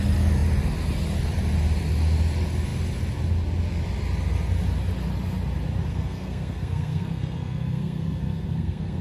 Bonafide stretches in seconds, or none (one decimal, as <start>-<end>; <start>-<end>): 0.0-5.9